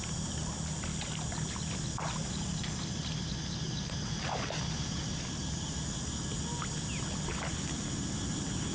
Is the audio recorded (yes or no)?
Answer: yes